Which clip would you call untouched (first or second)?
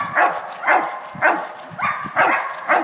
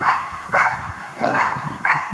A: first